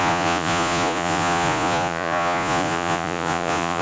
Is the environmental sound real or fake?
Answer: fake